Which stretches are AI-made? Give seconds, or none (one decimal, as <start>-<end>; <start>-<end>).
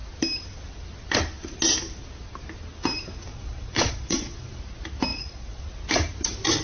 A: 3.3-4.6; 5.1-5.6